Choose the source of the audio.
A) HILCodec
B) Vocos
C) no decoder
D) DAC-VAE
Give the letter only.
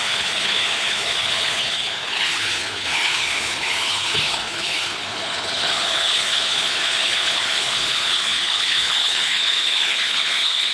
A